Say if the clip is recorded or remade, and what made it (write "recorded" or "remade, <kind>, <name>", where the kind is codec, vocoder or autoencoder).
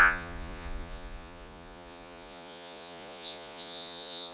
remade, vocoder, Vocos